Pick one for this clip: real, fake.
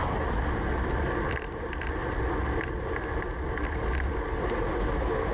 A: real